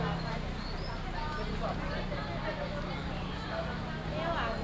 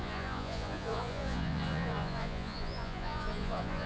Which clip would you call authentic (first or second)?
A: first